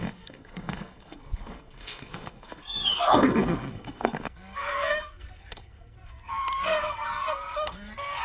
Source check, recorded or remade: remade